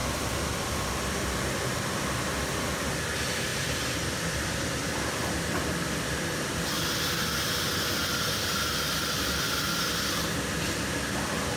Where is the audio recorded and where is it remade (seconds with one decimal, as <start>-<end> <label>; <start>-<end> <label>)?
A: 0.0-0.7 remade; 0.7-3.5 recorded; 3.5-6.5 remade; 6.5-11.6 recorded